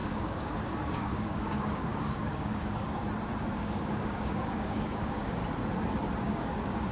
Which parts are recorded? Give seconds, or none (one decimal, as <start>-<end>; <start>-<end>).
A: 3.0-3.5; 5.4-6.2

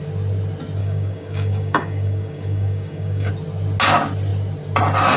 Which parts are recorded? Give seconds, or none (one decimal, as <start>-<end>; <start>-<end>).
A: 0.0-0.8; 3.3-5.2

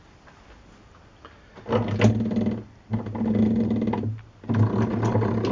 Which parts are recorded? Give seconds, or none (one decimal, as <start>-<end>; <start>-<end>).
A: 0.0-5.5

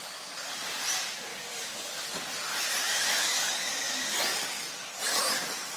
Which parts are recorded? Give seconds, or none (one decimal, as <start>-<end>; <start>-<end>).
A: 0.0-1.3; 2.0-2.8; 3.9-4.3; 5.0-5.8

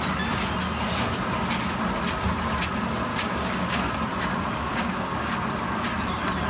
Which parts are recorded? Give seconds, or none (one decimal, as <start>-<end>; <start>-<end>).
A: 0.0-3.1; 3.8-4.7; 5.3-6.5

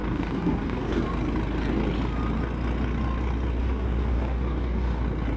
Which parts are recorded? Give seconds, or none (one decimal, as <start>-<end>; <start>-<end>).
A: 1.0-3.6; 5.0-5.4

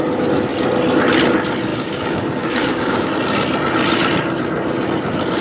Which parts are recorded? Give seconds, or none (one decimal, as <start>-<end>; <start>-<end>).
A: 0.0-1.7; 3.1-5.4